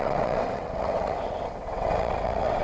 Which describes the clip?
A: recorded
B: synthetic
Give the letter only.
B